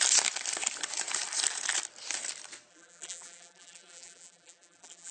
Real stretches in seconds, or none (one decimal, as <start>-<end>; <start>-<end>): 0.0-2.7

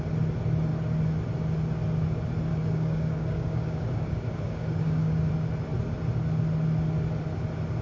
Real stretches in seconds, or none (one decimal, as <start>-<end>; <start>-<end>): 0.0-2.5; 5.3-7.8

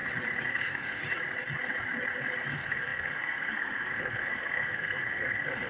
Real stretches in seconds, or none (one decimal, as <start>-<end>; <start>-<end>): 0.0-0.5; 1.0-2.5

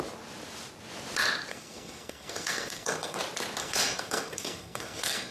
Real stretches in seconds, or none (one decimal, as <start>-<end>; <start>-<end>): 0.0-1.5; 3.2-3.6

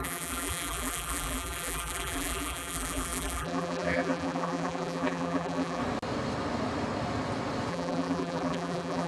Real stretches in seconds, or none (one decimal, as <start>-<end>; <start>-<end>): 5.8-7.7